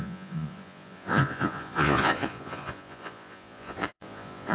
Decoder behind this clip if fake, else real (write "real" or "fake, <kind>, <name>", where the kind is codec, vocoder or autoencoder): fake, vocoder, Vocos